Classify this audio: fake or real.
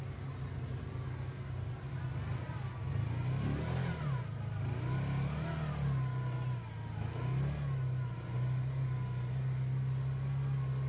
real